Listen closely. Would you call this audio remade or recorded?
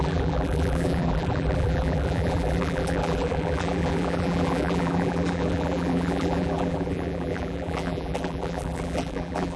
remade